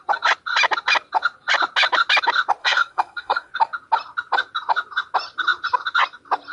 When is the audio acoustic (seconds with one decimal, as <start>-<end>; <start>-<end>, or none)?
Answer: 0.0-2.6; 3.5-6.5